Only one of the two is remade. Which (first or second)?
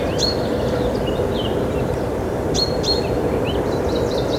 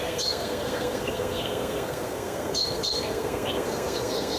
second